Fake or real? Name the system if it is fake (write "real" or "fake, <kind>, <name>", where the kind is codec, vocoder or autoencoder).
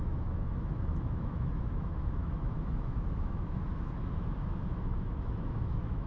fake, autoencoder, DAC-VAE